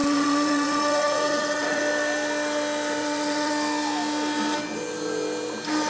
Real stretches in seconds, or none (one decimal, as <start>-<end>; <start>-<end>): 1.8-3.0; 3.5-5.9